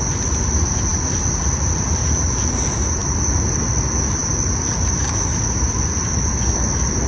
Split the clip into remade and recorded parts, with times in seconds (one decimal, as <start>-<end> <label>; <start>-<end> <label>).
0.0-3.0 recorded; 3.0-3.7 remade; 3.7-7.1 recorded